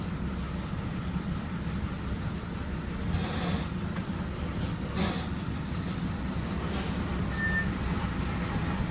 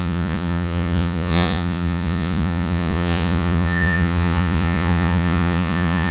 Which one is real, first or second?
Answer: first